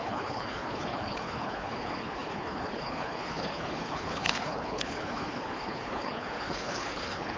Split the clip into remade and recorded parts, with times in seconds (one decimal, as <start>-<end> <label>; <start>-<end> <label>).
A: 0.0-7.4 remade